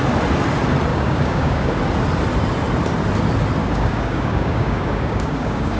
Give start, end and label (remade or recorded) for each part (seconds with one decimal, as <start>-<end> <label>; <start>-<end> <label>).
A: 0.0-0.9 recorded; 0.9-1.7 remade; 1.7-3.6 recorded; 3.6-5.8 remade